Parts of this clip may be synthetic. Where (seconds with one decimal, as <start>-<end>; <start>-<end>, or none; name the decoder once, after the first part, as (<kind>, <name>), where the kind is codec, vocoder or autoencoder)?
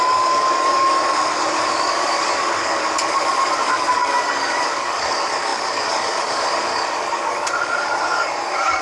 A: 0.0-8.8 (codec, DAC)